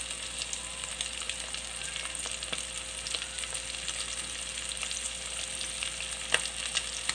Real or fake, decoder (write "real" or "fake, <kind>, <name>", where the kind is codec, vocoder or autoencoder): real